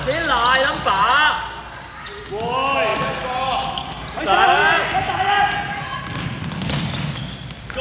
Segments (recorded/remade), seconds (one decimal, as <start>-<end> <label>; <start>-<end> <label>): 0.0-7.8 recorded